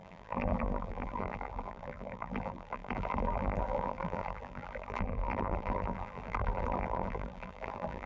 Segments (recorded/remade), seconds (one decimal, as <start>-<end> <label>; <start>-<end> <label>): 0.0-8.1 remade